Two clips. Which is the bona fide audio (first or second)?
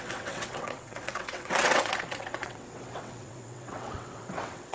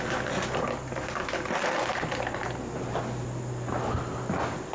second